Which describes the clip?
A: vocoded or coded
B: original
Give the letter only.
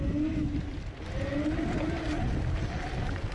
B